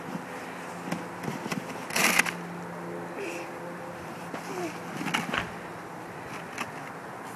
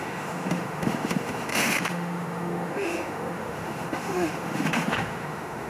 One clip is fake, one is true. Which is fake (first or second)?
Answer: second